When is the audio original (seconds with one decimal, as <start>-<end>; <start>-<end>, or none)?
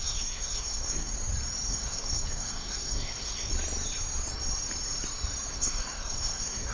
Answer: 1.1-1.7; 3.5-5.5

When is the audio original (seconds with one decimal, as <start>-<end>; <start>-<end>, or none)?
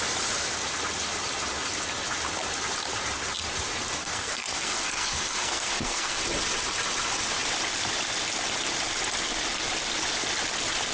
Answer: 0.0-4.0; 6.2-10.9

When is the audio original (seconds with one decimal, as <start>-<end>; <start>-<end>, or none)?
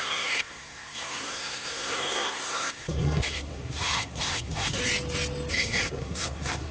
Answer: 4.8-5.5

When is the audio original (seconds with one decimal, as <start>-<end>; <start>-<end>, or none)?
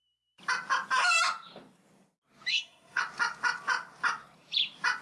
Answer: 0.0-2.5; 3.0-5.0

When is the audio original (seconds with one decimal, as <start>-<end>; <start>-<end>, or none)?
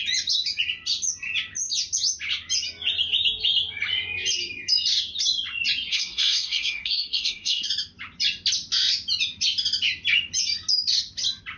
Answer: 0.0-5.9; 7.7-11.6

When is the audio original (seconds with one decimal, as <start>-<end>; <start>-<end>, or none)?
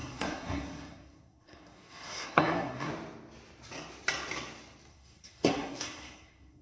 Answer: 2.9-4.9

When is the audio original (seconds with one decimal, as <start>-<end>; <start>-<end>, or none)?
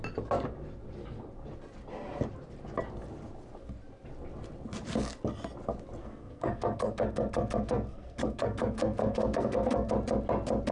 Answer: 0.0-6.0; 9.9-10.7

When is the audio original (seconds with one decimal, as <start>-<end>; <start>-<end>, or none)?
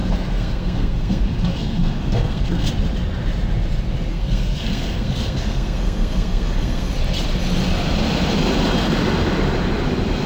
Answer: 2.7-4.1; 6.9-10.3